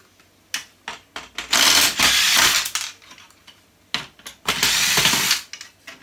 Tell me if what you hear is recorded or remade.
recorded